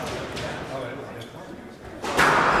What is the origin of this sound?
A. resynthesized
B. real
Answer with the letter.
B